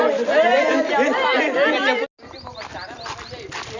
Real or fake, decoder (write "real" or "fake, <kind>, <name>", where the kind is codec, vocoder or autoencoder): real